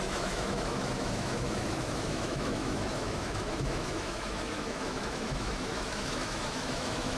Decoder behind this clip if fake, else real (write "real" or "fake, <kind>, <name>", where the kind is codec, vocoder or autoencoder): fake, autoencoder, DAC-VAE